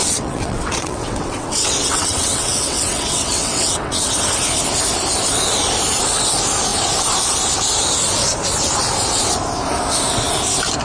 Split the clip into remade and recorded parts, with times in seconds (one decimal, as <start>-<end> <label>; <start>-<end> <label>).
0.0-4.1 remade; 4.1-10.8 recorded